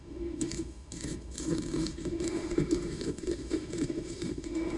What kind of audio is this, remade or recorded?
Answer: remade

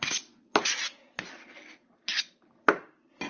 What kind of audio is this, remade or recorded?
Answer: recorded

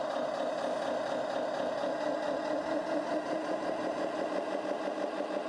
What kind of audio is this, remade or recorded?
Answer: recorded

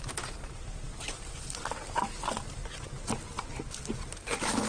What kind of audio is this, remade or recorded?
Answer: recorded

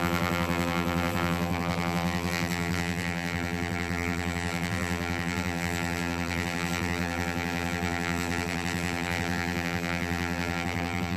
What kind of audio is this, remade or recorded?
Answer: remade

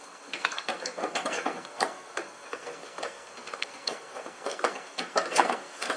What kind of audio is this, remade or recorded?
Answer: remade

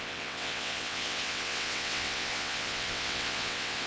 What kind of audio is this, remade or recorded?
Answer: remade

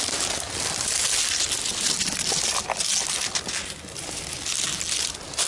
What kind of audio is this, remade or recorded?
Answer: recorded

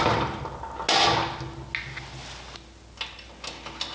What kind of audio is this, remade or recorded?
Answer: recorded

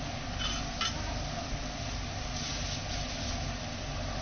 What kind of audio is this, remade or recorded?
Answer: recorded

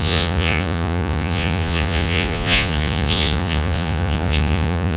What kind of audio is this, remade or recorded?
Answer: remade